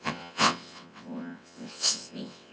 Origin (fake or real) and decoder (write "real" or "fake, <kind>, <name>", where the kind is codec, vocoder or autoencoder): fake, vocoder, WaveNeXt